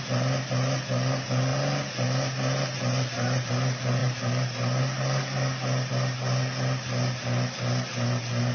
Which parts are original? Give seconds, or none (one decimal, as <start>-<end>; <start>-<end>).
0.0-8.5